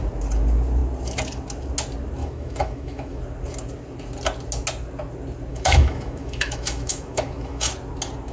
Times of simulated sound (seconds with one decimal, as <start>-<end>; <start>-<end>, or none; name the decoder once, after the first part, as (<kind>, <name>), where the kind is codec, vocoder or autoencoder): 2.2-3.2 (autoencoder, DAC-VAE); 5.5-7.7